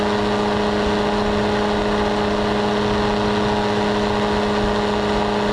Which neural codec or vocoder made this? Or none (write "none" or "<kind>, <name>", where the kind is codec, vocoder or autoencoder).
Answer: none